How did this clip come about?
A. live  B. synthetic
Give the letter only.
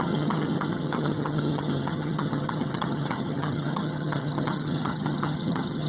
B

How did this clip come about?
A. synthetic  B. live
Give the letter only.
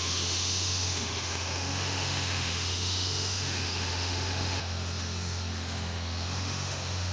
A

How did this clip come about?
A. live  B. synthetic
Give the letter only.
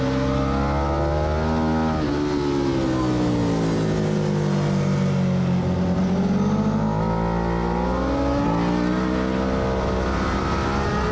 A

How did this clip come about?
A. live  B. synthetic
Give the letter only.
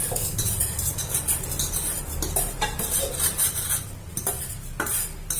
A